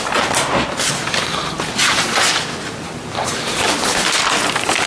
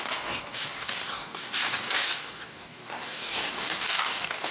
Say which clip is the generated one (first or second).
second